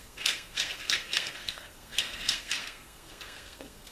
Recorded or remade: remade